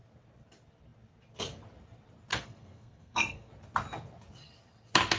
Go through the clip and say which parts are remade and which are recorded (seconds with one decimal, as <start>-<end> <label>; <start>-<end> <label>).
0.0-2.3 recorded; 2.3-3.5 remade; 3.5-5.2 recorded